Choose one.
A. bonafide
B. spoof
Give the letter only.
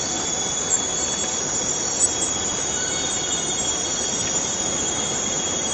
A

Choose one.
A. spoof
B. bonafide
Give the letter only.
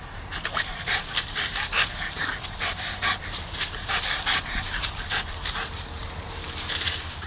A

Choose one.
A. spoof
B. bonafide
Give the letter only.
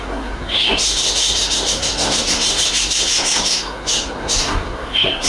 A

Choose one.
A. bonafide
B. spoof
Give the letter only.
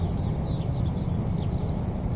A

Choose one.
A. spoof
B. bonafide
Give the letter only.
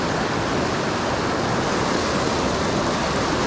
B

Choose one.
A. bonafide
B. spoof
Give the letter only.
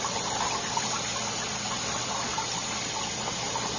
A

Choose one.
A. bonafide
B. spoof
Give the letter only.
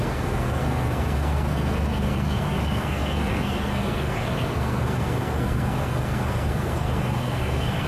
B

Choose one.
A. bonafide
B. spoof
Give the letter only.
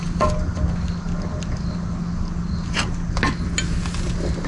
A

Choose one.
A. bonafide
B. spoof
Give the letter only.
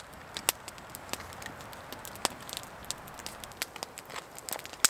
A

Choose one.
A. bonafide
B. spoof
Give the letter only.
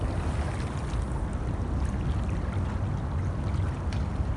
A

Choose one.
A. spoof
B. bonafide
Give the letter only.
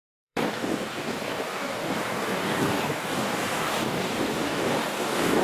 A